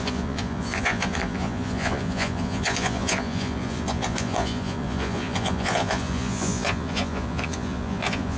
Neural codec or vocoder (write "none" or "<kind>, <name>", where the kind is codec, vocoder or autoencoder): vocoder, Vocos